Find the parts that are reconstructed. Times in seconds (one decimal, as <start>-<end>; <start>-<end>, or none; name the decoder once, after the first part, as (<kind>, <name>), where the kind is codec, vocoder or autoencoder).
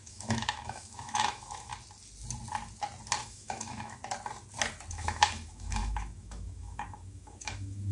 0.0-1.7 (autoencoder, DAC-VAE); 3.2-4.0; 4.9-7.9